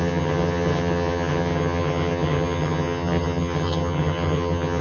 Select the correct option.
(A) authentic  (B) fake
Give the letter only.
B